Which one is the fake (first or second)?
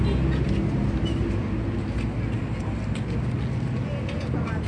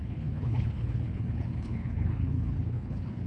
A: second